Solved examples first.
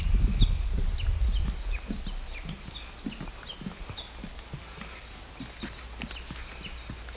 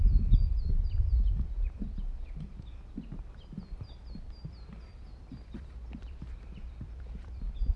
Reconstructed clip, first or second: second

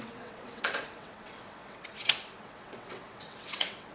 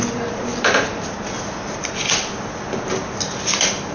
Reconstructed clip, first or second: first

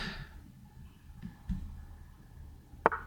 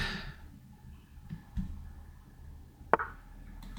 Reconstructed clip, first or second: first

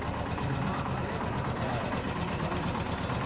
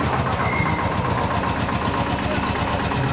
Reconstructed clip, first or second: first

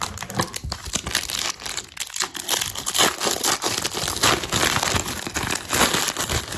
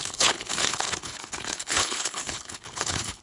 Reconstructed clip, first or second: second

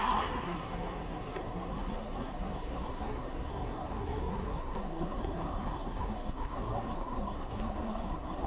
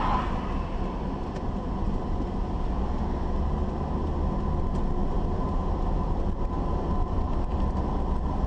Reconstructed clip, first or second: first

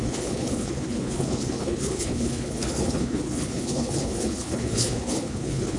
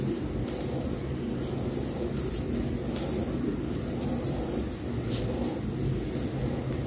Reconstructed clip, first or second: first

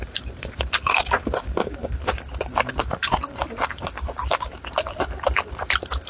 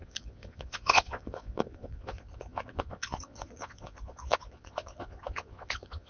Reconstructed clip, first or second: second